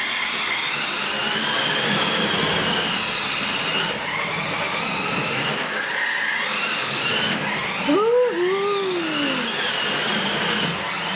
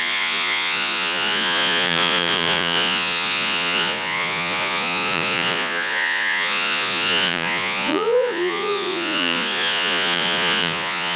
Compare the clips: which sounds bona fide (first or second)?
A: first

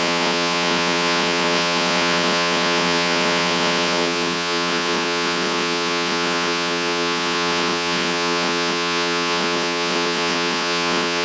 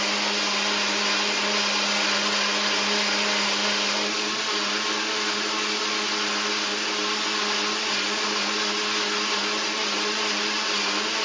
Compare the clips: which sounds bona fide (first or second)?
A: second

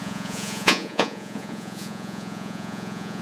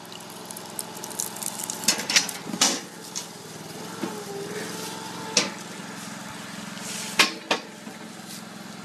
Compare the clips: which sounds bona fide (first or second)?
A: second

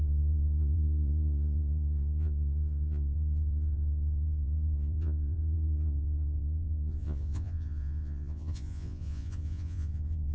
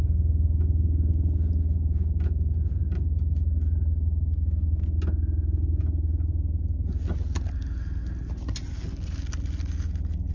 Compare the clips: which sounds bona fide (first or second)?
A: second